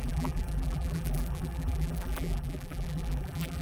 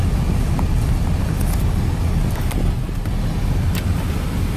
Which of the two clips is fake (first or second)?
first